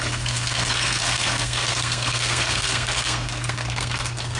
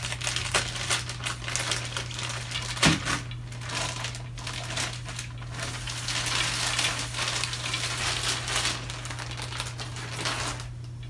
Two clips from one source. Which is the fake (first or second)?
first